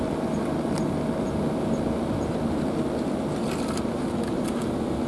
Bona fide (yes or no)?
yes